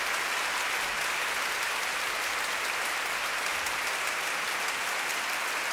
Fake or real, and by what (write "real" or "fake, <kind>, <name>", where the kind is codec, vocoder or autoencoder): real